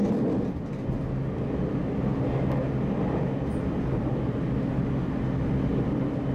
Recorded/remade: recorded